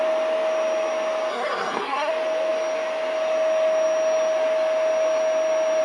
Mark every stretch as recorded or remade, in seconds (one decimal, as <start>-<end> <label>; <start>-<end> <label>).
0.0-1.3 recorded; 1.3-2.1 remade; 2.1-5.8 recorded